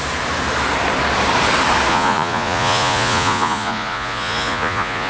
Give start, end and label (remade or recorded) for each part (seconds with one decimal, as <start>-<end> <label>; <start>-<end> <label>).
0.0-1.9 recorded; 1.9-5.1 remade

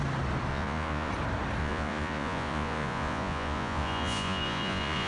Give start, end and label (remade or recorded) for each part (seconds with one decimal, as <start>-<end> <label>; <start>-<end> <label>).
0.0-0.5 recorded; 0.5-1.1 remade; 1.1-1.6 recorded; 1.6-5.1 remade

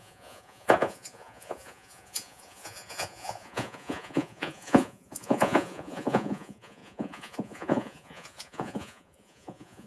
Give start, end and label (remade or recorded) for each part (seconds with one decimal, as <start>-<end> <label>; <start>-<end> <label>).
0.0-9.9 remade

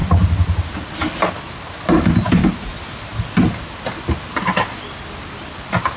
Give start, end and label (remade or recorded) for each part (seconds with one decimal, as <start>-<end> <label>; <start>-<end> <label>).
0.0-6.0 recorded